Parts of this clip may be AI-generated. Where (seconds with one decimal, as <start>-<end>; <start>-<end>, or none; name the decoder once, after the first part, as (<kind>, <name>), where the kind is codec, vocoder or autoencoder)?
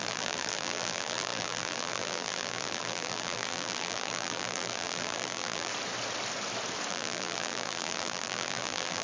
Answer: 0.0-5.7 (vocoder, BigVGAN v2); 6.9-9.0